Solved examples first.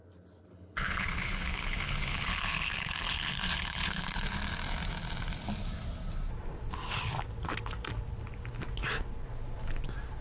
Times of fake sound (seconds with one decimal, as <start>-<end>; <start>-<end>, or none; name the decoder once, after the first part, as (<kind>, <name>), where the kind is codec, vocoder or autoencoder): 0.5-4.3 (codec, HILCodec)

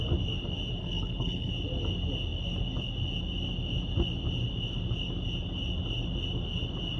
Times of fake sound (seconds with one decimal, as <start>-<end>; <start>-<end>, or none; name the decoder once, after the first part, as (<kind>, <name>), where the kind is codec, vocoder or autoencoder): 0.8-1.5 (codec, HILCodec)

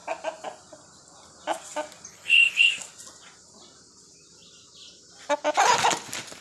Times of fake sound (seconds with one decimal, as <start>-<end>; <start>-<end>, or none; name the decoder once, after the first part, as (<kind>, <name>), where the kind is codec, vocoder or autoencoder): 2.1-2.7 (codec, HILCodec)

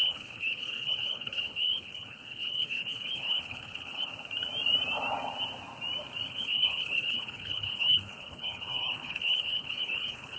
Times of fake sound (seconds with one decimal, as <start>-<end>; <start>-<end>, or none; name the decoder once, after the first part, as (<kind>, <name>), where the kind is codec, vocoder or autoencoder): 0.0-4.1 (codec, HILCodec); 6.3-10.4